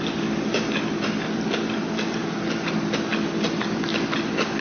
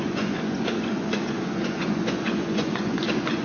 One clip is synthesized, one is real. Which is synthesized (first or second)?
second